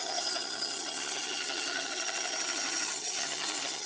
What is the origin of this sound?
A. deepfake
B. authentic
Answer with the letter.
A